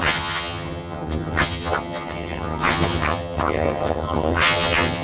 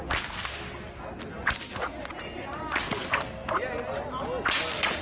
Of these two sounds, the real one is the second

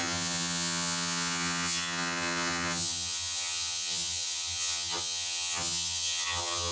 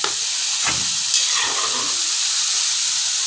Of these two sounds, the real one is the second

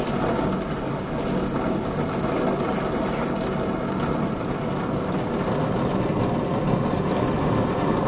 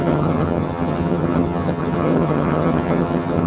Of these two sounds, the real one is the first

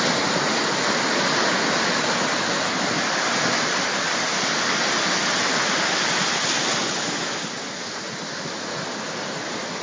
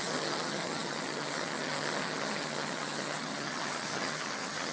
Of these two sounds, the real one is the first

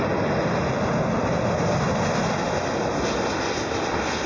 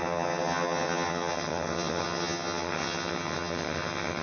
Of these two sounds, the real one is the first